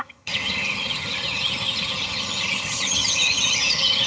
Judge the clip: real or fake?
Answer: fake